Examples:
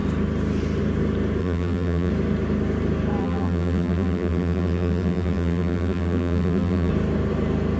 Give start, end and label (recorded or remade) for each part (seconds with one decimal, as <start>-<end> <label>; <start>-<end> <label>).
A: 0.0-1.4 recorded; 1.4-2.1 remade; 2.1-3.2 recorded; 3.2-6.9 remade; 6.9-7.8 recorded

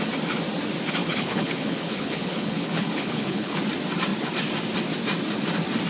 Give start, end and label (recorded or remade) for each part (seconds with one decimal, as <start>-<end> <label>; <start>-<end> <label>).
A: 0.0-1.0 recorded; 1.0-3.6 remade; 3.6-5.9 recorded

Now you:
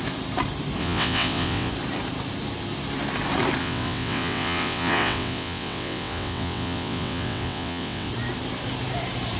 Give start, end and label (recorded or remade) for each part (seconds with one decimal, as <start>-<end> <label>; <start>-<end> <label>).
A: 0.0-0.8 recorded; 0.8-1.7 remade; 1.7-3.6 recorded; 3.6-8.1 remade; 8.1-9.4 recorded

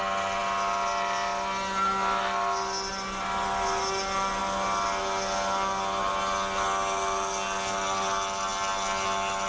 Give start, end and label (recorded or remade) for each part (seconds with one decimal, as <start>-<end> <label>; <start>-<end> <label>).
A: 0.0-9.5 recorded